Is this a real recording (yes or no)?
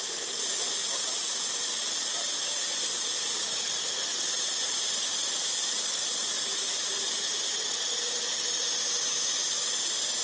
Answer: yes